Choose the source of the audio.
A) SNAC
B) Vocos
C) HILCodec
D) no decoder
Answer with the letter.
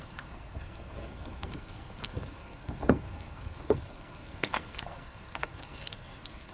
A